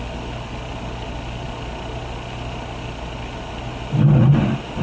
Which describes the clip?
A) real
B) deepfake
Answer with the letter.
A